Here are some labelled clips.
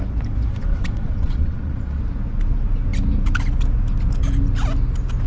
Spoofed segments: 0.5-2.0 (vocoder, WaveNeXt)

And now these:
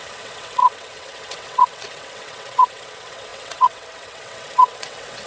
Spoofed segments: 0.0-5.3 (vocoder, WaveNeXt)